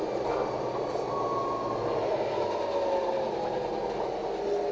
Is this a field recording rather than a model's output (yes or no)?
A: yes